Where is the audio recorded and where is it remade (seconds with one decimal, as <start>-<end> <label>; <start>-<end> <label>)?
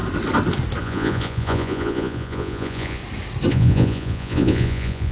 0.0-0.8 recorded; 0.8-3.0 remade; 3.0-3.5 recorded; 3.5-5.1 remade